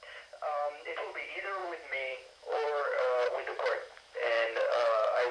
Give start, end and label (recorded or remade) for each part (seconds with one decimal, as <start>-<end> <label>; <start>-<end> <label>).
0.0-5.3 remade